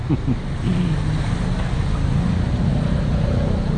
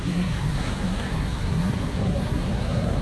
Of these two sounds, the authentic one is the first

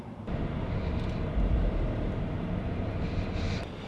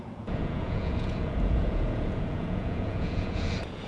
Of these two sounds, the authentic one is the first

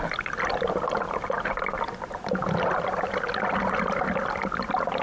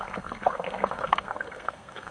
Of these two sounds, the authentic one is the first